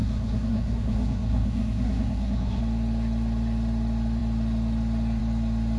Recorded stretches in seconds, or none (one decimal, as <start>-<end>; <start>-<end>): 2.6-5.8